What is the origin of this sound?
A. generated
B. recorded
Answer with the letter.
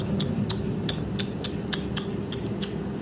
B